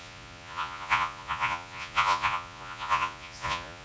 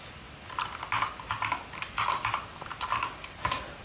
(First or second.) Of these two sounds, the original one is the second